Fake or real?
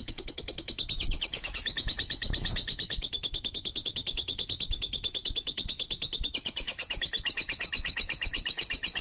fake